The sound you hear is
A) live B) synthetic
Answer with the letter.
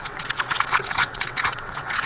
B